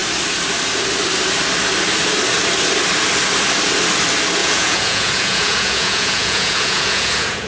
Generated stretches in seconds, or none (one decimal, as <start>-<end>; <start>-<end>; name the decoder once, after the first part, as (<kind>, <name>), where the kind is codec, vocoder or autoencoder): 4.4-7.5 (vocoder, Vocos)